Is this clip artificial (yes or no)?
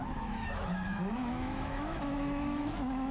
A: yes